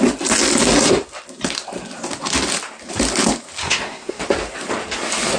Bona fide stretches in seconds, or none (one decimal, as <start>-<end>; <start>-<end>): 0.0-3.6; 4.2-5.4